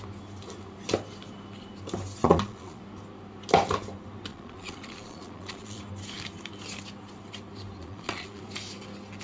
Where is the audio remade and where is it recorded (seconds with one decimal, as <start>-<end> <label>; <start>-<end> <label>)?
0.0-2.2 recorded; 2.2-2.8 remade; 2.8-4.3 recorded; 4.3-5.8 remade; 5.8-7.8 recorded; 7.8-8.4 remade; 8.4-9.2 recorded